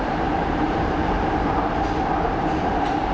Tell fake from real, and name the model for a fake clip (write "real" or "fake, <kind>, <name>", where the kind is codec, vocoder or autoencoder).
fake, vocoder, BigVGAN v2